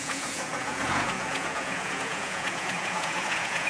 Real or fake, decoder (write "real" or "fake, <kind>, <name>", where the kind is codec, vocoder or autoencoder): fake, vocoder, Vocos